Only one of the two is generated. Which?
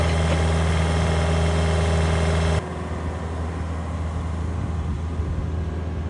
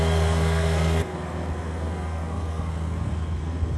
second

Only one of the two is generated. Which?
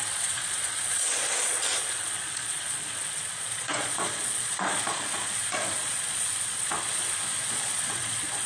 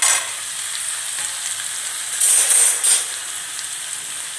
first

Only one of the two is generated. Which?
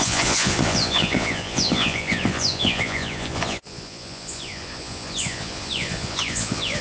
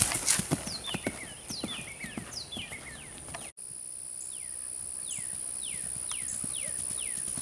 first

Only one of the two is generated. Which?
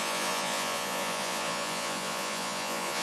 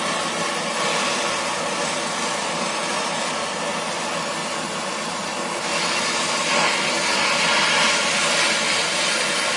first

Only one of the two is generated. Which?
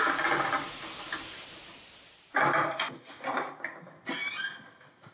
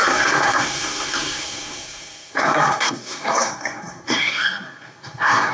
second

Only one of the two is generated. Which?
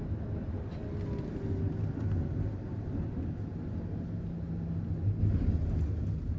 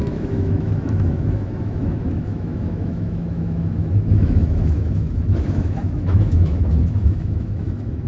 second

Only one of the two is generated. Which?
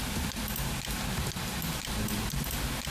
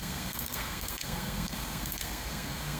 second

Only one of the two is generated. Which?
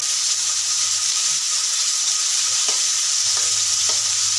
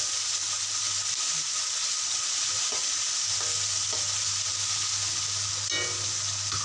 first